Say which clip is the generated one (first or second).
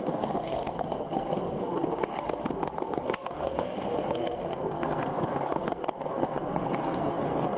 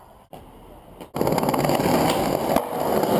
first